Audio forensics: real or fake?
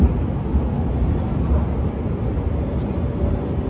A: real